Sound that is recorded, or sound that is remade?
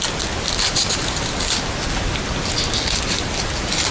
recorded